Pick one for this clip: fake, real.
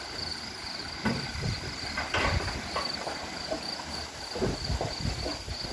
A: real